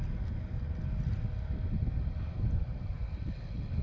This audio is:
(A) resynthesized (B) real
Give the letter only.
B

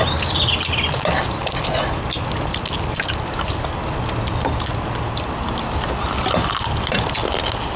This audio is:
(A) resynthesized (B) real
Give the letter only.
B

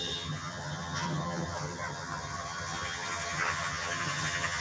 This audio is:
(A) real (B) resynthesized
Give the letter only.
B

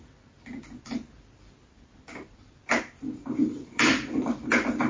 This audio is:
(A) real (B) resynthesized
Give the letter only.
A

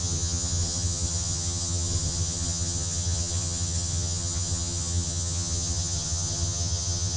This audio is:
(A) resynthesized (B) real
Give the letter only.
A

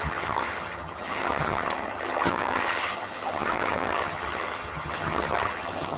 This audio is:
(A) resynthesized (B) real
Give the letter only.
A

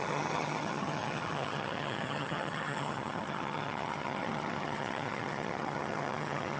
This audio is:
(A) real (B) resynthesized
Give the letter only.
B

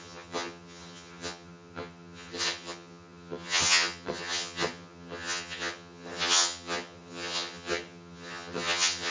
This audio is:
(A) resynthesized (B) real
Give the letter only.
A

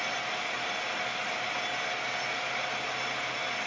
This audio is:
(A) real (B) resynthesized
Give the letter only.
A